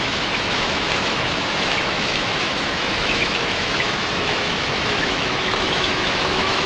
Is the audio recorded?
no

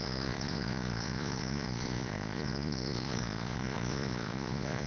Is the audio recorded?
no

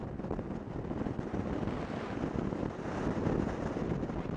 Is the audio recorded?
yes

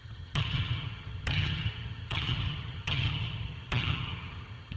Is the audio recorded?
no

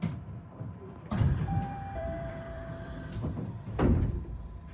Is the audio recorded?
no